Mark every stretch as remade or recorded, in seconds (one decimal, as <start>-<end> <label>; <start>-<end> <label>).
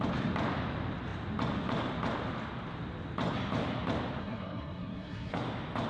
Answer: 0.0-4.2 recorded; 4.2-5.4 remade; 5.4-5.9 recorded